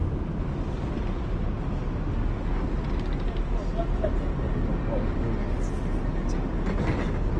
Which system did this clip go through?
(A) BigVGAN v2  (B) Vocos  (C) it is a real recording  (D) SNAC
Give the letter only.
C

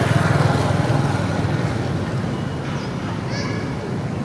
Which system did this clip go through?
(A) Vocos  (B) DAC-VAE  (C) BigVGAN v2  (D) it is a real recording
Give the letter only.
D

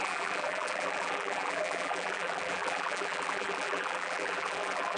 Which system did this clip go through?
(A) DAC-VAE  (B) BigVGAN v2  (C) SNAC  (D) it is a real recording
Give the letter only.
B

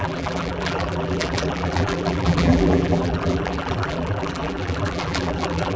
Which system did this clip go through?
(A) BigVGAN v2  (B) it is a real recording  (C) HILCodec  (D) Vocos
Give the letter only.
A